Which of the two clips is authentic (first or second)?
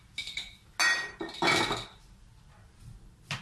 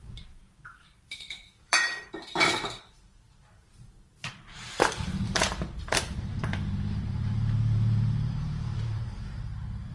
first